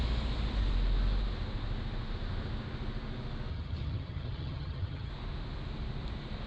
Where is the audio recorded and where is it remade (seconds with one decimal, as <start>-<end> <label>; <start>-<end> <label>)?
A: 0.0-3.5 recorded; 3.5-5.1 remade; 5.1-6.5 recorded